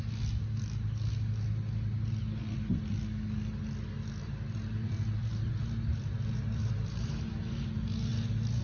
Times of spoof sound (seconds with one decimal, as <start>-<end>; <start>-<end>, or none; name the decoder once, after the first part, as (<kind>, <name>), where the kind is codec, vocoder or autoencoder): 4.8-8.6 (vocoder, BigVGAN v2)